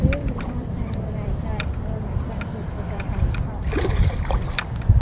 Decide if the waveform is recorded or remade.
remade